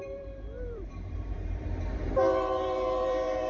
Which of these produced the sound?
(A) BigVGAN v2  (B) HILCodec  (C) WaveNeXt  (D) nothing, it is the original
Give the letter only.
A